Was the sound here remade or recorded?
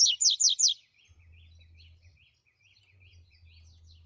recorded